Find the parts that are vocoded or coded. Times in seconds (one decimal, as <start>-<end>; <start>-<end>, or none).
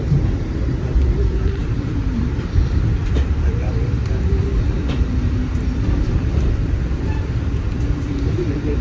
0.0-8.8